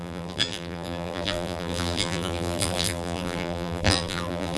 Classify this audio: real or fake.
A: fake